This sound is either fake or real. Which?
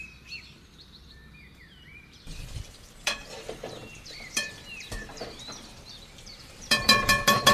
fake